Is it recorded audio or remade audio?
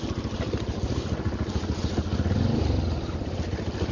recorded